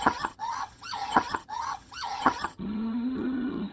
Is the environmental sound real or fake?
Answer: fake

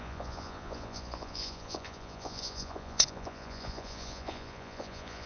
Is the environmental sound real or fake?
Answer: fake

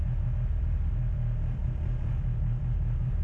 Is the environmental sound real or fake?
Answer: fake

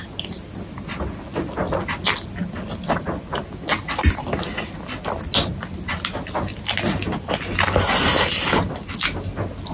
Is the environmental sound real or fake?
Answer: real